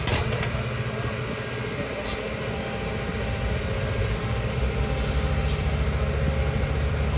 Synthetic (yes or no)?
no